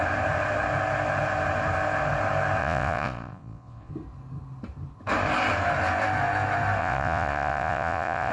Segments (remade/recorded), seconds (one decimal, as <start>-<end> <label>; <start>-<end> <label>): 0.0-2.6 recorded; 2.6-3.9 remade; 3.9-6.8 recorded; 6.8-8.3 remade

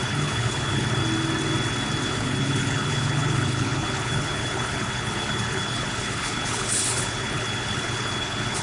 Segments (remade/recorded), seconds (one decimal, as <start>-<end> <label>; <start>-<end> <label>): 0.0-1.0 remade; 1.0-2.0 recorded; 2.0-8.6 remade

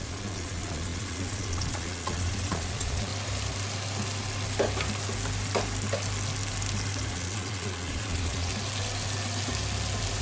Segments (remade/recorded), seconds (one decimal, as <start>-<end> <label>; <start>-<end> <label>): 0.0-3.1 remade; 3.1-7.1 recorded; 7.1-8.5 remade; 8.5-10.2 recorded

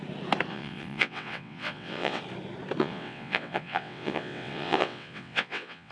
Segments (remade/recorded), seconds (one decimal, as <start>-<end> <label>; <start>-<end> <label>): 0.0-0.5 recorded; 0.5-2.2 remade; 2.2-2.8 recorded; 2.8-5.9 remade